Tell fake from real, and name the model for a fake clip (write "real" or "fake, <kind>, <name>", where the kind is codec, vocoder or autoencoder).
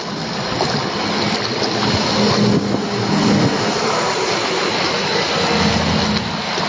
real